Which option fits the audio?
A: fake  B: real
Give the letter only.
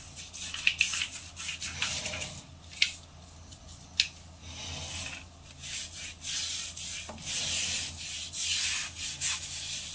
B